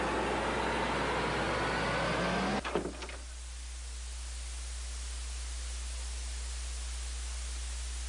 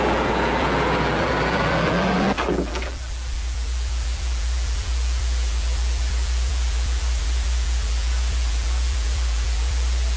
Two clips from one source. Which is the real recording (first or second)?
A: first